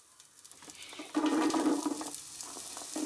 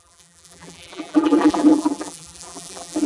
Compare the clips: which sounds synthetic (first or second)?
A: second